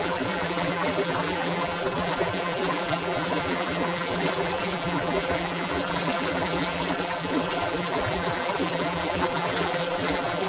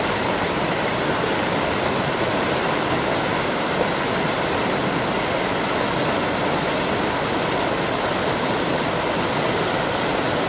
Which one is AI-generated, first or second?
first